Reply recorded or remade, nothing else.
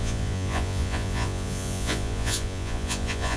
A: remade